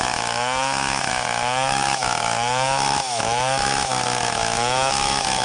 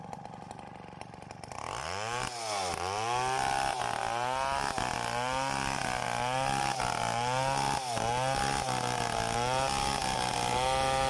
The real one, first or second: second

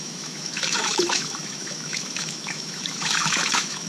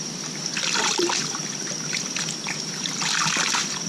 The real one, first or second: second